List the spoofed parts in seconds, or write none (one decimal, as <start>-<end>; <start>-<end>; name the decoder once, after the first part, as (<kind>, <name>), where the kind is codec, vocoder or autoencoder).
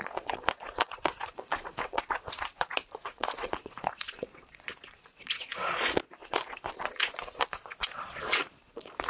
0.0-9.1 (vocoder, Vocos)